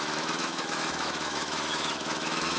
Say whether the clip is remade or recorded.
remade